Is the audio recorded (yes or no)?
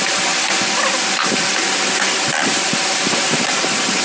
yes